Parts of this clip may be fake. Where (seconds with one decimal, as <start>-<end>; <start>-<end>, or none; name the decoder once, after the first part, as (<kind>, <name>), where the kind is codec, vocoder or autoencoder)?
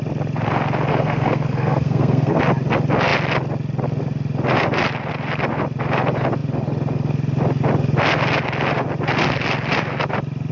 0.9-2.4 (codec, SNAC)